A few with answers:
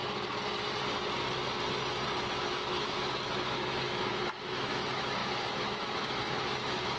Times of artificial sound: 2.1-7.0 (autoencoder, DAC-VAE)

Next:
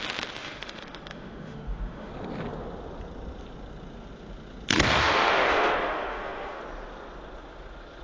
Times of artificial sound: 0.4-2.1 (autoencoder, DAC-VAE); 5.0-6.6

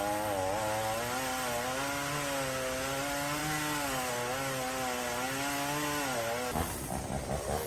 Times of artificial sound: none

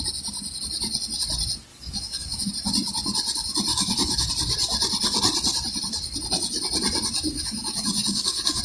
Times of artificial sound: 1.7-2.5 (autoencoder, DAC-VAE); 3.7-4.3; 7.3-8.6

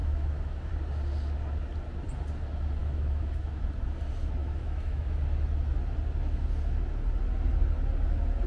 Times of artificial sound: 0.0-0.7 (autoencoder, DAC-VAE); 2.8-3.6; 4.4-5.2

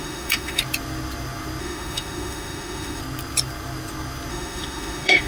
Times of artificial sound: 0.0-0.6 (autoencoder, DAC-VAE); 1.6-3.0; 4.3-5.3

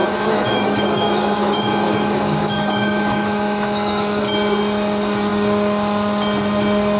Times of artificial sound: 0.0-4.2 (autoencoder, DAC-VAE)